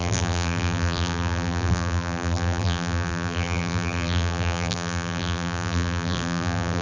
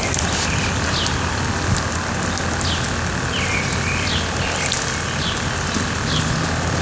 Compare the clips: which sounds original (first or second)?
second